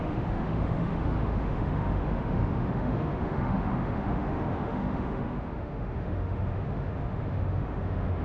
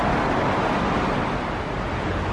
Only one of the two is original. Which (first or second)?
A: second